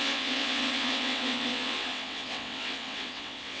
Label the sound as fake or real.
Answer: fake